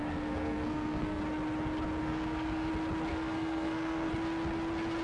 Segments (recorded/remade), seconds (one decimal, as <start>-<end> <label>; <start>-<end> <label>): 0.0-1.2 remade; 1.2-2.0 recorded; 2.0-2.7 remade; 2.7-3.1 recorded; 3.1-4.1 remade; 4.1-5.0 recorded